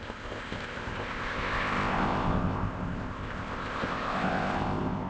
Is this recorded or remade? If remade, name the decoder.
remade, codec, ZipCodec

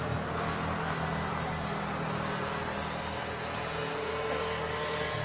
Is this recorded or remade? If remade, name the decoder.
recorded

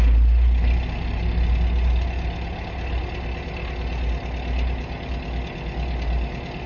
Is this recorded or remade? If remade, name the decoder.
recorded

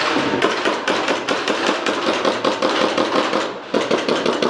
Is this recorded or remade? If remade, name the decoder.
remade, vocoder, BigVGAN v2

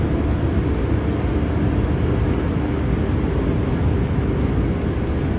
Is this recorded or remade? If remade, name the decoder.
recorded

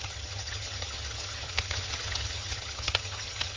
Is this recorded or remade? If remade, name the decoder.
remade, vocoder, HiFi-GAN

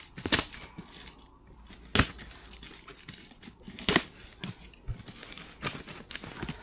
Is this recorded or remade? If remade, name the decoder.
recorded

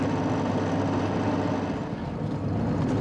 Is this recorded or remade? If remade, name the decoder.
recorded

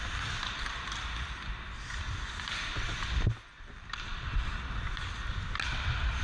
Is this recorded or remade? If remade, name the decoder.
recorded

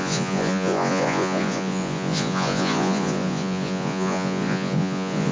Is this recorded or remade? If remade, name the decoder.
remade, vocoder, Vocos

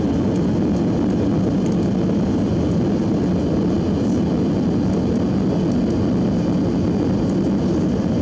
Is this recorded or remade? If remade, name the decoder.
recorded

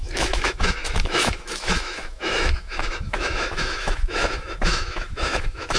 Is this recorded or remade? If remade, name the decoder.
remade, autoencoder, DAC-VAE